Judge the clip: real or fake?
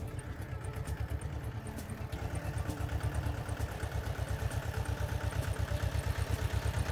fake